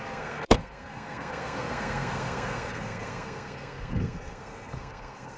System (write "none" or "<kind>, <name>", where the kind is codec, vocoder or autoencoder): codec, SNAC